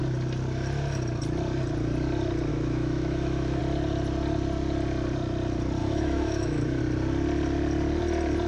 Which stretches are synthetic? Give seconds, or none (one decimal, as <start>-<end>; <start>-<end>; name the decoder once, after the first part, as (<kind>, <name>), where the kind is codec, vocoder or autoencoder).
2.5-3.6 (autoencoder, DAC-VAE); 5.8-6.8